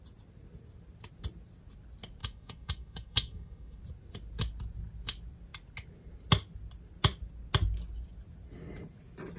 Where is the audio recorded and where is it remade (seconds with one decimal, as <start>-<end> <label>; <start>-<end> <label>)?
0.0-2.2 recorded; 2.2-3.8 remade; 3.8-9.4 recorded